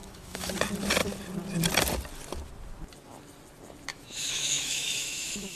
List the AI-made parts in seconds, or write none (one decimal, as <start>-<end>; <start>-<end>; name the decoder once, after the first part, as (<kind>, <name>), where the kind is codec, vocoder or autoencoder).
0.0-0.5 (autoencoder, DAC-VAE); 3.9-5.6